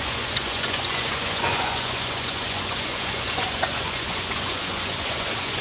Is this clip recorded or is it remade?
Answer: remade